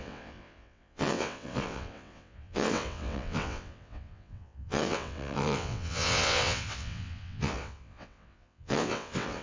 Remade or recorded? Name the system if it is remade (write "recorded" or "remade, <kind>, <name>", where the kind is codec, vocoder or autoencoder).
remade, vocoder, WaveNeXt